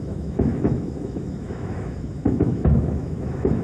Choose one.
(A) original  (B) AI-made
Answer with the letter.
B